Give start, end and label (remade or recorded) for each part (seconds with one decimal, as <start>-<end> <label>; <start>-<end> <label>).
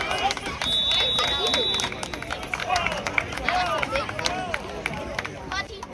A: 0.0-2.6 recorded; 2.6-3.4 remade; 3.4-5.9 recorded